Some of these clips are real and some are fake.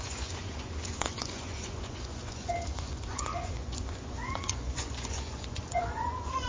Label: fake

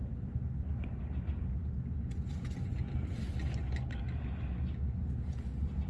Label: real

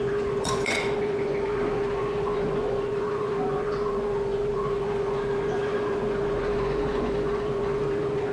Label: fake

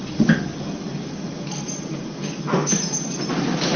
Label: real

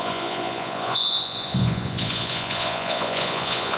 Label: fake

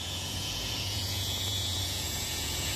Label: fake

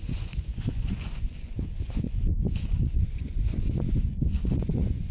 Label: fake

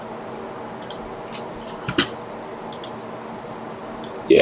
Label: real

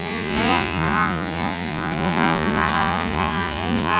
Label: fake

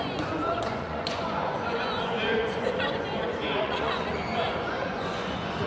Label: fake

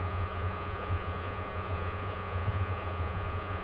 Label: fake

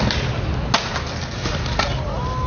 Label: real